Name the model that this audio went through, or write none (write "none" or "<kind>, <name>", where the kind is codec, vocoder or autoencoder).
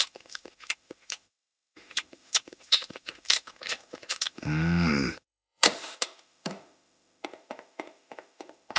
autoencoder, DAC-VAE